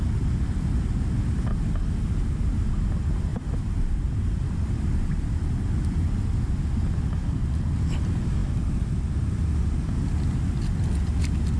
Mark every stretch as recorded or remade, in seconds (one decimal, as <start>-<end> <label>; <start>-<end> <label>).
0.0-3.3 recorded; 3.3-4.9 remade; 4.9-11.6 recorded